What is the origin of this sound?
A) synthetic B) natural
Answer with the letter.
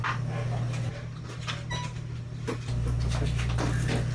B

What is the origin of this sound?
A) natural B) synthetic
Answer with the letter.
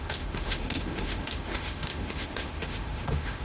B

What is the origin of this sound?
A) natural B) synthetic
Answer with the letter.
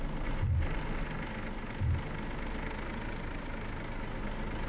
A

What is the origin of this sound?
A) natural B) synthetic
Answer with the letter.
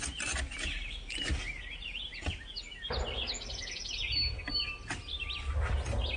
A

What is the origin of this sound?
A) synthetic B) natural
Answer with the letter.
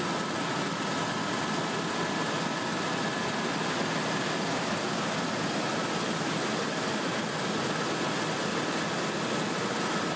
B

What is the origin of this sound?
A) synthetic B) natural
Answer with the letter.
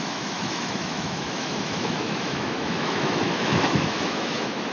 A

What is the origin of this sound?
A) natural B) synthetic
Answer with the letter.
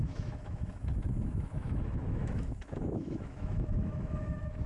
B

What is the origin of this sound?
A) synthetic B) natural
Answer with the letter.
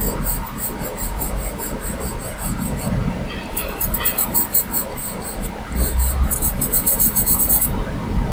B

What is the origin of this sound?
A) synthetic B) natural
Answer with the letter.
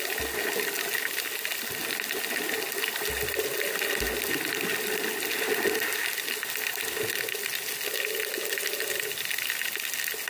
B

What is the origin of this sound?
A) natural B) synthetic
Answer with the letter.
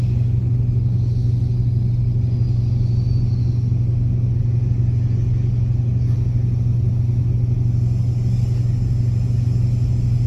A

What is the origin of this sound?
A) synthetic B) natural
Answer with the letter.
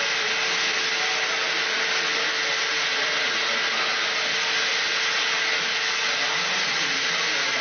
B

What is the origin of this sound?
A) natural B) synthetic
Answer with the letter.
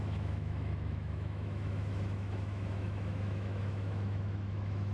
B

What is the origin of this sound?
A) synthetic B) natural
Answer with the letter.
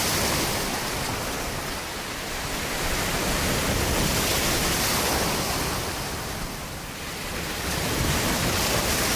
B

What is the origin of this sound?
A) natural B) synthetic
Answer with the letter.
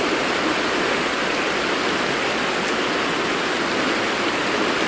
A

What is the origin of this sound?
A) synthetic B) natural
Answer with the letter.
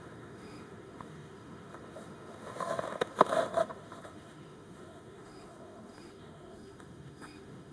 A